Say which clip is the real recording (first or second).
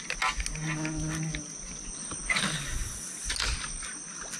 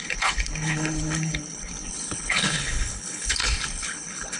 first